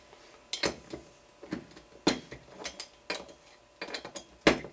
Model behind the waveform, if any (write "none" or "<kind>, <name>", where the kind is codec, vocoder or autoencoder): none